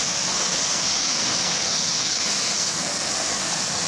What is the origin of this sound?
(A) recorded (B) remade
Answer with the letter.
B